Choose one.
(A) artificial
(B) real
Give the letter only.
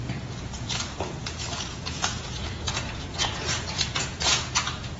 A